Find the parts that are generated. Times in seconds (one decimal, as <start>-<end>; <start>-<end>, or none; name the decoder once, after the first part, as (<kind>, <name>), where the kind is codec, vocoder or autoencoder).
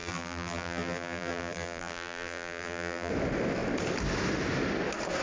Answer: 0.0-3.1 (vocoder, BigVGAN v2)